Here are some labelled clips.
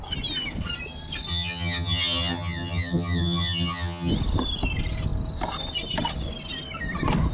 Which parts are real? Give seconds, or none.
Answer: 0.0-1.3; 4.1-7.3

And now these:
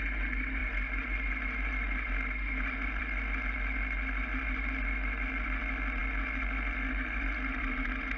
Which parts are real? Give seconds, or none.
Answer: 0.0-8.2

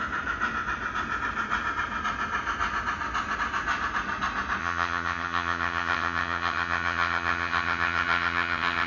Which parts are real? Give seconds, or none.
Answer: 0.0-4.6

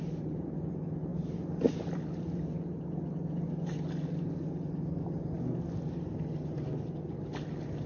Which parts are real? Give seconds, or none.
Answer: 0.0-7.9

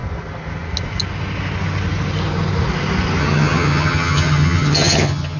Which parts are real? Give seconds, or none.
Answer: 0.0-3.2